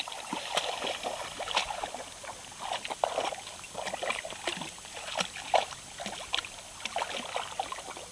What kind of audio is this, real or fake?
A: real